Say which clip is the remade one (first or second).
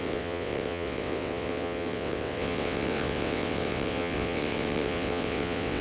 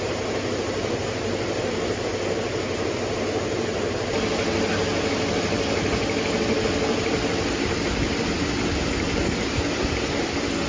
first